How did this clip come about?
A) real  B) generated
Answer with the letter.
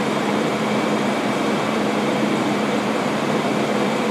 B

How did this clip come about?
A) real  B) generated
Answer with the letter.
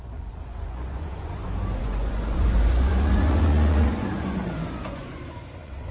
B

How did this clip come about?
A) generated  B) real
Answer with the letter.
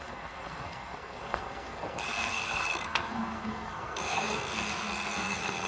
A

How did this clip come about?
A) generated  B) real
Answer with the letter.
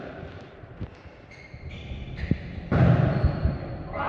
A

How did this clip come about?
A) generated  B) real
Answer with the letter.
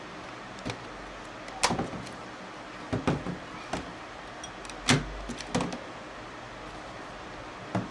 B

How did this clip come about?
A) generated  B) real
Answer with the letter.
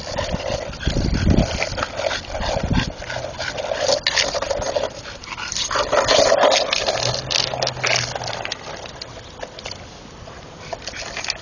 B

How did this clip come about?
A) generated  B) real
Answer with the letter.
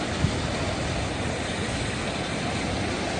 B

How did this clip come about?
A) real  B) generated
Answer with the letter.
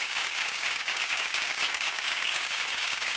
B